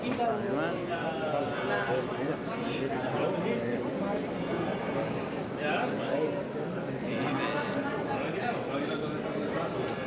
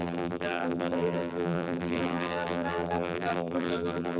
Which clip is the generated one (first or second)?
second